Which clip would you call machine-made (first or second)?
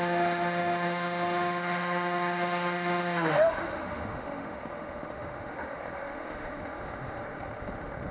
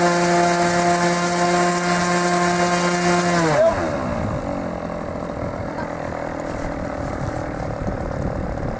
first